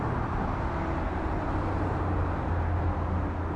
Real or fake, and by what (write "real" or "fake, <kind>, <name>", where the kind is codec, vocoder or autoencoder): real